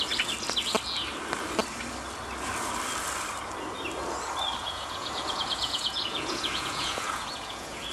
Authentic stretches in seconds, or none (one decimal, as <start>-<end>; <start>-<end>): 0.0-4.6